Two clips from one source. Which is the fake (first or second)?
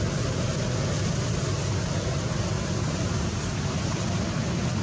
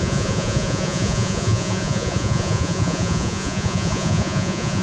second